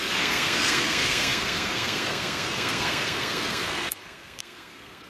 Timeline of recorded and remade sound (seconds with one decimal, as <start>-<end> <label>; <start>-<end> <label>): 0.0-5.1 remade